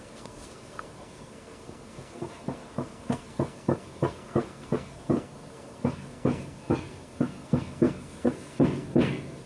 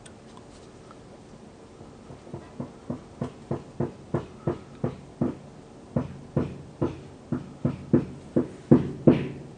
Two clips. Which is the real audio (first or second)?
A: second